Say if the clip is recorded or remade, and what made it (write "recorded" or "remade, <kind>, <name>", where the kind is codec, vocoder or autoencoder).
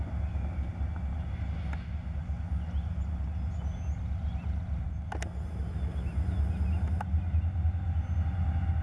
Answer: recorded